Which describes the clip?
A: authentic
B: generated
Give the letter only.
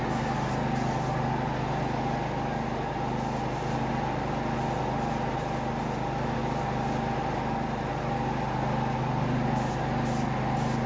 A